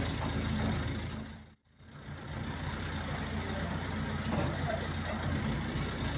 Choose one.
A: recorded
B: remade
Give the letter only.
A